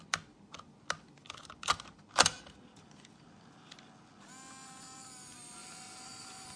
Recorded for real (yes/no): yes